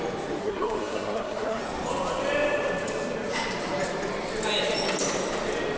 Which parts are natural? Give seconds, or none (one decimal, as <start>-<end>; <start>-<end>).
0.0-0.4; 1.6-5.8